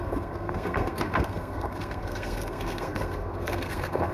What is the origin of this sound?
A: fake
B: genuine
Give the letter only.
A